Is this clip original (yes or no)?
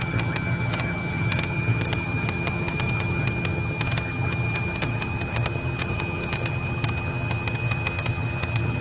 no